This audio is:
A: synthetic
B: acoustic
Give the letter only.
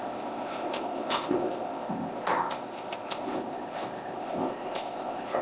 A